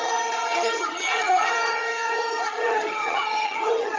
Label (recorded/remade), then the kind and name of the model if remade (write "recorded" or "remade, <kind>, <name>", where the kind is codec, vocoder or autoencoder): remade, vocoder, HiFi-GAN